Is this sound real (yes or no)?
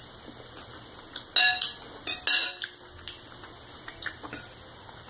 yes